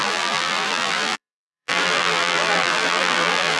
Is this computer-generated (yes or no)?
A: yes